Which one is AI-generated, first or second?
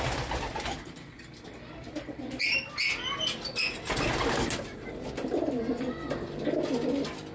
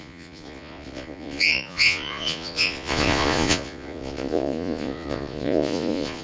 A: second